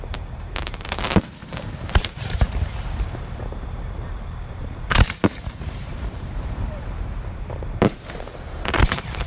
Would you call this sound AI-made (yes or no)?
yes